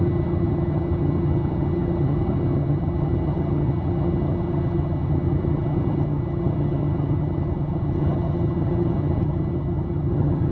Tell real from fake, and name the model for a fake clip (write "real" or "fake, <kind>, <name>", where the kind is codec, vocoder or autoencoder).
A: fake, vocoder, HiFi-GAN